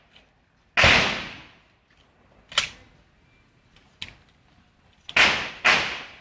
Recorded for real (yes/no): yes